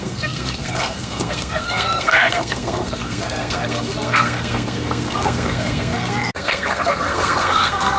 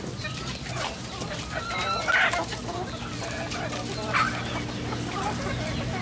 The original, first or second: second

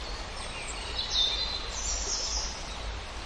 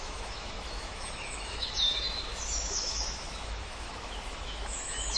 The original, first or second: first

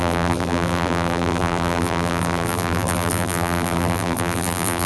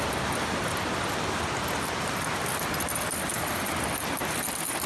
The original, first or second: second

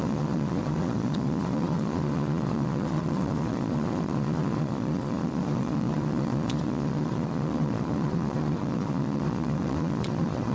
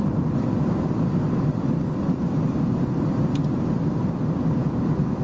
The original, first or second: second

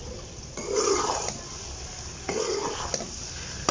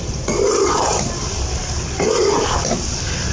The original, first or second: first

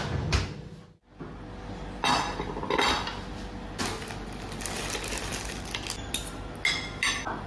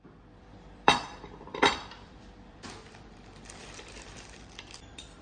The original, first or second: first